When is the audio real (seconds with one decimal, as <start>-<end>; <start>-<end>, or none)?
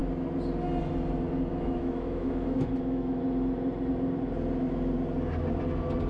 0.0-1.5; 3.2-6.1